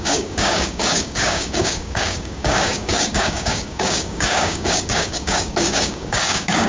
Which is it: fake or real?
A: fake